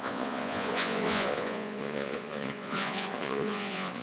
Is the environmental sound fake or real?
fake